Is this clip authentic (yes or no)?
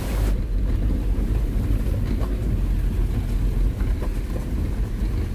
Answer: yes